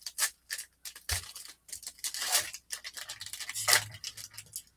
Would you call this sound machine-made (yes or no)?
no